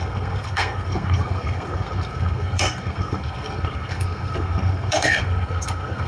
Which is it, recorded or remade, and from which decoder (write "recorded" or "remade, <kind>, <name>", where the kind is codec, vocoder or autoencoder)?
remade, codec, SNAC